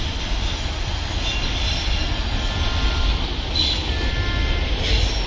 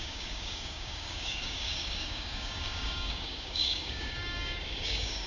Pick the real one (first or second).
first